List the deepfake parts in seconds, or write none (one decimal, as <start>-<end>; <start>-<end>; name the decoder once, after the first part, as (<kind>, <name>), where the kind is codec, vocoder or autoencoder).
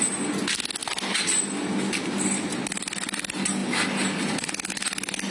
none